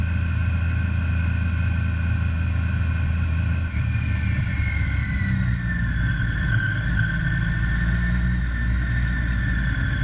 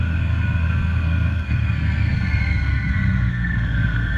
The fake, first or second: second